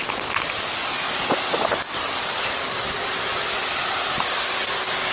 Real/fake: real